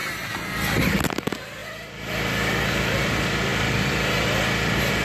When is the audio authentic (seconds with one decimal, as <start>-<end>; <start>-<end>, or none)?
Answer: 0.0-5.0